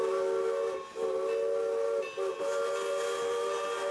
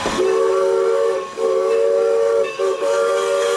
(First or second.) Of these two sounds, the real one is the first